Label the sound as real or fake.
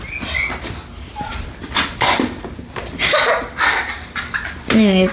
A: real